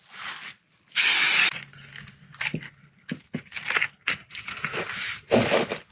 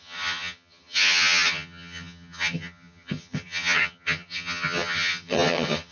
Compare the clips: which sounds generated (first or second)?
second